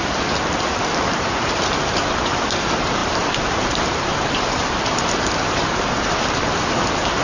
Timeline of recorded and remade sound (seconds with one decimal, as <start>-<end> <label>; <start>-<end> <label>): 0.0-0.7 recorded; 0.7-7.2 remade